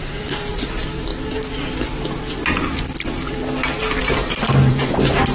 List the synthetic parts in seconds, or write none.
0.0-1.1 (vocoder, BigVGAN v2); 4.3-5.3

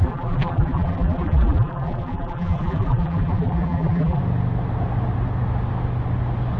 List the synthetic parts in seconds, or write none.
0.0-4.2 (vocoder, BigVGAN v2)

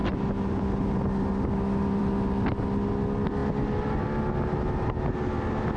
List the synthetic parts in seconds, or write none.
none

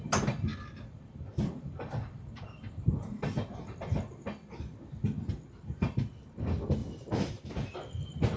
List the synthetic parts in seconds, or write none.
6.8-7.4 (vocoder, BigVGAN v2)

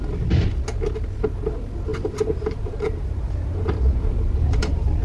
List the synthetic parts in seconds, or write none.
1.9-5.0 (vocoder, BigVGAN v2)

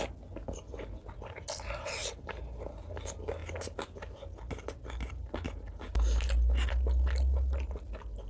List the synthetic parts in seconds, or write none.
2.0-2.9 (vocoder, BigVGAN v2)